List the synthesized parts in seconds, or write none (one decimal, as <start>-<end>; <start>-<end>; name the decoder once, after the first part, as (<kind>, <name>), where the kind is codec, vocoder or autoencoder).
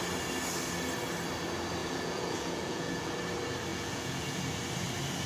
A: 1.8-3.1 (vocoder, Vocos); 3.7-4.4